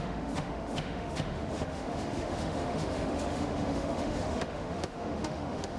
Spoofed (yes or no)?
yes